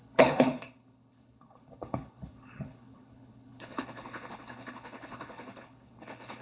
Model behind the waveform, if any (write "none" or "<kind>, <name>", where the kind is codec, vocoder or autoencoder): codec, HILCodec